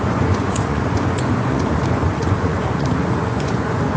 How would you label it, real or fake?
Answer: fake